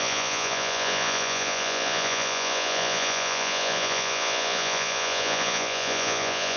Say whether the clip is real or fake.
fake